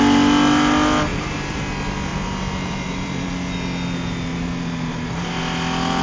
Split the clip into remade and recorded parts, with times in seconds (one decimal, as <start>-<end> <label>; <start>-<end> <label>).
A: 0.0-1.1 recorded; 1.1-1.7 remade; 1.7-2.1 recorded; 2.1-3.3 remade; 3.3-4.3 recorded; 4.3-5.4 remade; 5.4-6.0 recorded